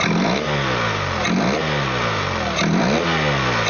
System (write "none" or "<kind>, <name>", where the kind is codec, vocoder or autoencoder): none